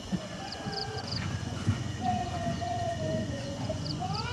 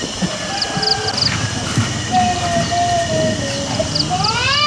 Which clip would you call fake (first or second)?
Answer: first